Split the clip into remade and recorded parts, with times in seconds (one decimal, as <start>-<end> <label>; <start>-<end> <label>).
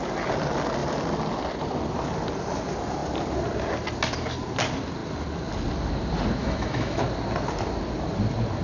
0.0-6.4 recorded; 6.4-7.0 remade; 7.0-8.6 recorded